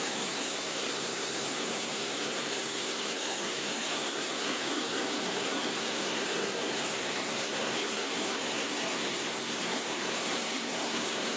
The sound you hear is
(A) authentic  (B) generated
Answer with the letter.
B